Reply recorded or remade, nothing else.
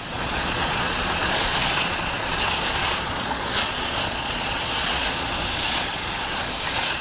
remade